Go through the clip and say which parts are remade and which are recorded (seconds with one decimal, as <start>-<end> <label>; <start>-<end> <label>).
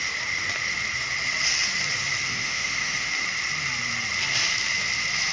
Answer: 0.0-2.3 recorded; 2.3-3.1 remade; 3.1-5.3 recorded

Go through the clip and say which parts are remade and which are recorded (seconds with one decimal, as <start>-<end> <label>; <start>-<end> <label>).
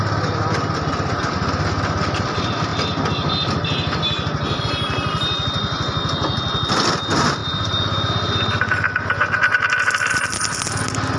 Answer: 0.0-11.2 recorded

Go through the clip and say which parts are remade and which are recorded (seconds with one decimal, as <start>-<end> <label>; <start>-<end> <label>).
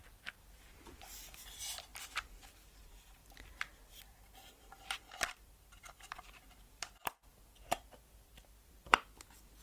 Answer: 0.0-3.2 remade; 3.2-3.9 recorded; 3.9-7.3 remade; 7.3-8.7 recorded; 8.7-9.6 remade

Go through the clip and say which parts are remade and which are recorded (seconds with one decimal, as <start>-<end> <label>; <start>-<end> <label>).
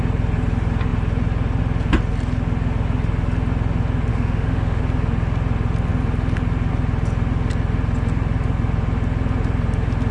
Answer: 0.0-4.1 recorded; 4.1-4.8 remade; 4.8-10.1 recorded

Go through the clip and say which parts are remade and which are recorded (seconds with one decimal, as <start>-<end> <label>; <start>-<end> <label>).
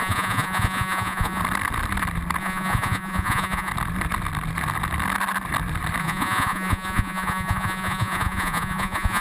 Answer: 0.0-1.4 remade; 1.4-2.4 recorded; 2.4-3.7 remade; 3.7-6.0 recorded; 6.0-9.2 remade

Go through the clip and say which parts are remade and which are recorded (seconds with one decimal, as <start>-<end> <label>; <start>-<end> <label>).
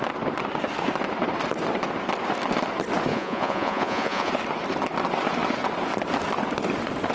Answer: 0.0-3.1 recorded; 3.1-4.3 remade; 4.3-7.1 recorded